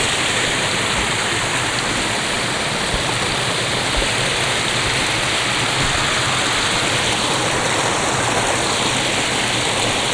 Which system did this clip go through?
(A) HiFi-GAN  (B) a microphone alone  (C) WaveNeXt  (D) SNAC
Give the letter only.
B